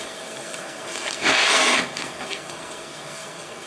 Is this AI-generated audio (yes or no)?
yes